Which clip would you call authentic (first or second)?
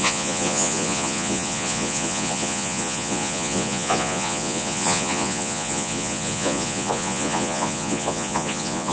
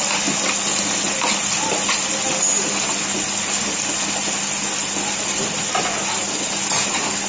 second